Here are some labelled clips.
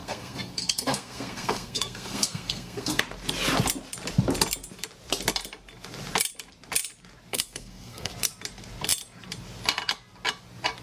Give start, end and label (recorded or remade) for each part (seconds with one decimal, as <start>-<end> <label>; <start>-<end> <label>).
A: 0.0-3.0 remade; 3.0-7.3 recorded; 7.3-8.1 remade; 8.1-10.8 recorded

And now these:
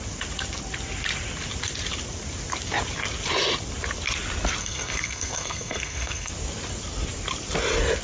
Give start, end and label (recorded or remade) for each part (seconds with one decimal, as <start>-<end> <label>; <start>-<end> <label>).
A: 0.0-4.6 recorded; 4.6-6.3 remade; 6.3-8.0 recorded

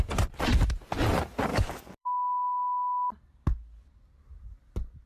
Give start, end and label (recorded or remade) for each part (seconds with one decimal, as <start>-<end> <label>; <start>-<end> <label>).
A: 0.0-1.5 recorded; 1.5-3.1 remade; 3.1-5.1 recorded

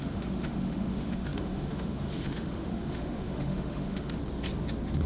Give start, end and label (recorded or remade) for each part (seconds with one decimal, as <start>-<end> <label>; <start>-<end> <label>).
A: 0.0-4.2 remade; 4.2-5.1 recorded

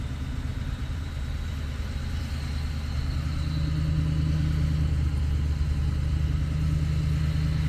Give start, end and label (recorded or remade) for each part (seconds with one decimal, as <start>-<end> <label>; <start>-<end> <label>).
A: 0.0-0.5 recorded; 0.5-2.7 remade; 2.7-7.7 recorded

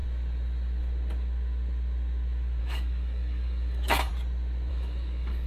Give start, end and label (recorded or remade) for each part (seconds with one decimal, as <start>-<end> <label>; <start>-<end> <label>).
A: 0.0-2.6 recorded; 2.6-4.1 remade; 4.1-4.7 recorded; 4.7-5.5 remade